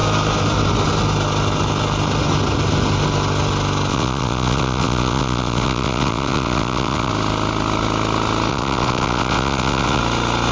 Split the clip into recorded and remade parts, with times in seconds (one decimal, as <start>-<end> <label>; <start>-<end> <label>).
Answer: 0.0-3.9 recorded; 3.9-7.1 remade; 7.1-8.5 recorded; 8.5-10.0 remade; 10.0-10.5 recorded